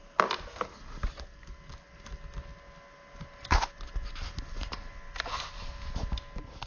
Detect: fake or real real